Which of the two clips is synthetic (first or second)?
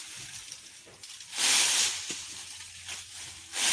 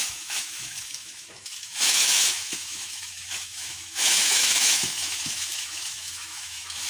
second